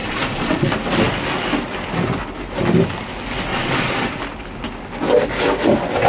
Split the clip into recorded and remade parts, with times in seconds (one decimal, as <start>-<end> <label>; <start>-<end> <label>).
0.0-0.7 remade; 0.7-3.5 recorded; 3.5-4.2 remade; 4.2-6.1 recorded